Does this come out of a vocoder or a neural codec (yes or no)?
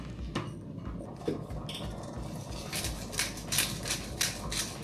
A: no